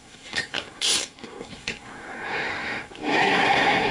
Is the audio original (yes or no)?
no